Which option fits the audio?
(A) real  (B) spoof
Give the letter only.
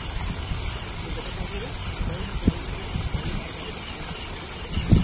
A